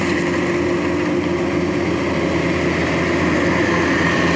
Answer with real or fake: real